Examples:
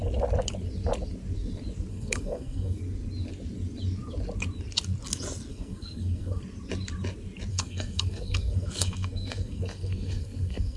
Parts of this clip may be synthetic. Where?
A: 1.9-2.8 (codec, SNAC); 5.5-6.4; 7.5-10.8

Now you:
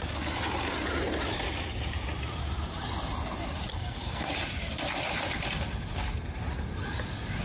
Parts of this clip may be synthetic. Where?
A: 3.7-4.3 (codec, SNAC)

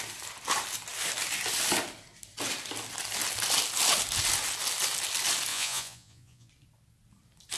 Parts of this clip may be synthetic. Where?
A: 5.5-6.5 (vocoder, Vocos)

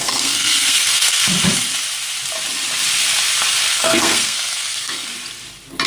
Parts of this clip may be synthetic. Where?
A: 0.0-1.3 (codec, SNAC); 3.7-5.1

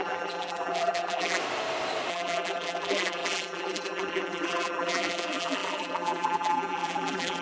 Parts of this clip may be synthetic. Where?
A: 0.0-1.4 (vocoder, BigVGAN v2); 2.1-7.4

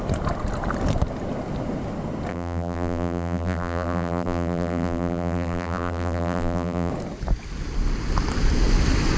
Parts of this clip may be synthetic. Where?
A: 2.3-6.9 (vocoder, BigVGAN v2)